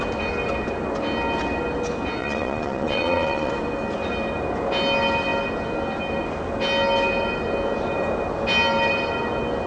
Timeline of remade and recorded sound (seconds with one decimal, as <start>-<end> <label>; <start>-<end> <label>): 0.0-2.2 recorded; 2.2-3.5 remade; 3.5-9.7 recorded